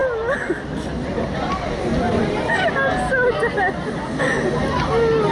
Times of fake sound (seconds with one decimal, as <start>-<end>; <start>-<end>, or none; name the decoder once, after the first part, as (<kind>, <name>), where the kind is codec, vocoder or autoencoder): none